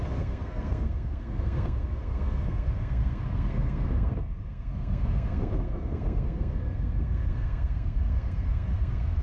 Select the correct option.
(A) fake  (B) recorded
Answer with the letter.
A